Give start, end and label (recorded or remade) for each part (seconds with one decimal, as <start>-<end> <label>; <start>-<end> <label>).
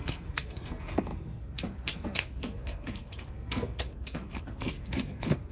0.0-5.5 remade